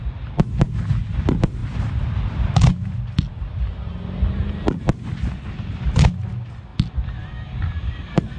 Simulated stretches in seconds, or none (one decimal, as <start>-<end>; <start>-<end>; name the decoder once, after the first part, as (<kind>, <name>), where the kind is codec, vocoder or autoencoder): none